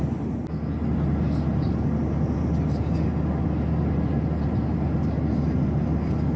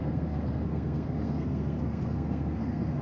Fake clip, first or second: second